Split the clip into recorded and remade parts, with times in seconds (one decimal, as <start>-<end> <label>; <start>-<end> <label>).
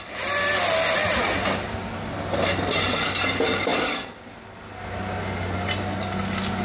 0.0-6.6 recorded